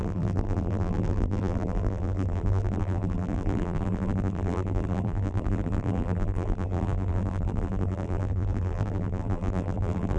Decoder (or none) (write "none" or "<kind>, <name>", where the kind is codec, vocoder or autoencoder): vocoder, BigVGAN v2